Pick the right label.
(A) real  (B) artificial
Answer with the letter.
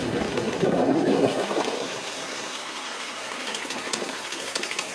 B